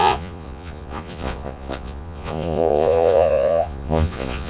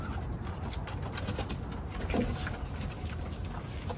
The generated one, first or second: first